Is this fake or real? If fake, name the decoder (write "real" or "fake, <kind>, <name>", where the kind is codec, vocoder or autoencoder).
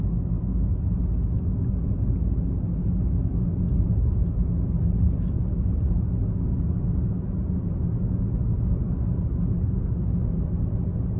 real